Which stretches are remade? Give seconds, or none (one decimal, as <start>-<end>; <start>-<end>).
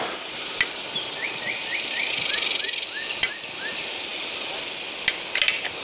none